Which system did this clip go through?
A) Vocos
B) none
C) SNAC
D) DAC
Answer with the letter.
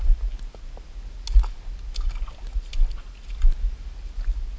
B